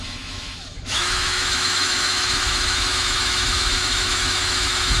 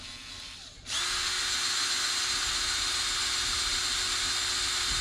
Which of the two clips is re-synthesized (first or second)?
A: first